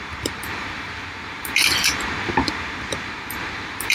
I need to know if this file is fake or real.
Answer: fake